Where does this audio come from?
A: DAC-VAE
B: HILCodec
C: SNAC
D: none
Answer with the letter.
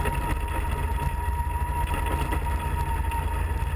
D